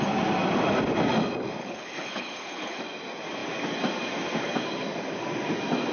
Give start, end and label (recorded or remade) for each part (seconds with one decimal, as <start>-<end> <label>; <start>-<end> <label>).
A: 0.0-1.6 recorded; 1.6-2.8 remade; 2.8-5.9 recorded